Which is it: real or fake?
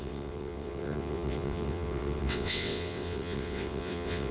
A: fake